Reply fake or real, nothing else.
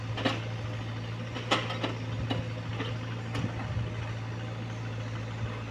real